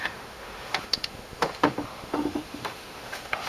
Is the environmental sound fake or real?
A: fake